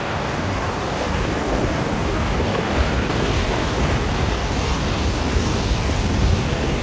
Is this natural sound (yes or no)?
no